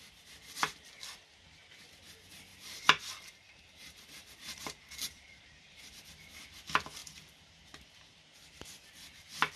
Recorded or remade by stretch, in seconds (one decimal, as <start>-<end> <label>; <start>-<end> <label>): 0.0-2.5 recorded; 2.5-6.1 remade; 6.1-9.6 recorded